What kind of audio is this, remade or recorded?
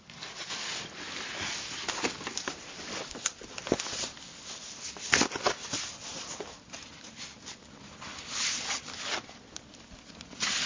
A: recorded